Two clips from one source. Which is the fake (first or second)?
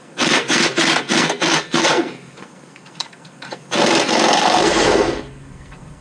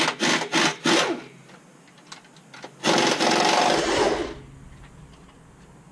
first